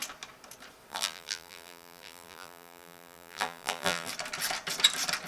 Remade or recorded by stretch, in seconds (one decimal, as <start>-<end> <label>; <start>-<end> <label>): 0.0-0.9 recorded; 0.9-4.1 remade; 4.1-5.3 recorded